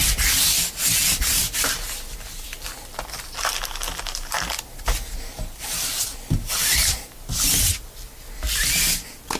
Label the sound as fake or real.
real